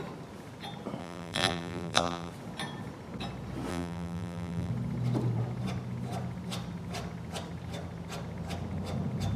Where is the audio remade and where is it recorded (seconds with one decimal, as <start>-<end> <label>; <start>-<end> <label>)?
0.0-1.0 recorded; 1.0-2.3 remade; 2.3-3.7 recorded; 3.7-4.7 remade; 4.7-9.4 recorded